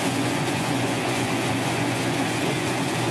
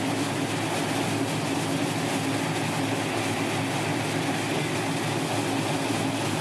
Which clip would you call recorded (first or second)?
second